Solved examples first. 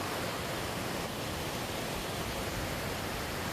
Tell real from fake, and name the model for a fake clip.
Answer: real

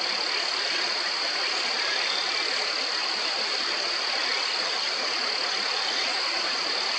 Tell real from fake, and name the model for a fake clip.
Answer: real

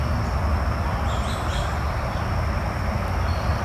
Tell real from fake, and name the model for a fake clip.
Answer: real